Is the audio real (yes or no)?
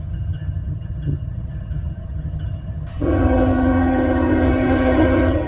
no